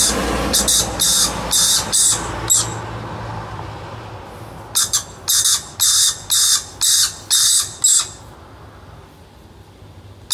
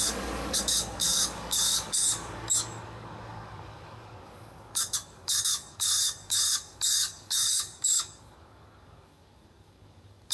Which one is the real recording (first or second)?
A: first